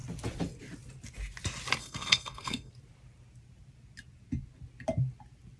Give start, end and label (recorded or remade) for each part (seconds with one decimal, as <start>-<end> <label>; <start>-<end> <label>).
0.0-1.8 recorded; 1.8-2.7 remade; 2.7-5.6 recorded